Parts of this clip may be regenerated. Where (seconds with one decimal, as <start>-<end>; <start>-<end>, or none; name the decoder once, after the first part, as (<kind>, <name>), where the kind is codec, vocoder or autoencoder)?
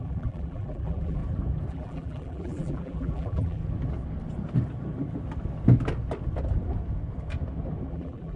0.0-1.2 (vocoder, BigVGAN v2); 1.7-3.6; 7.9-8.4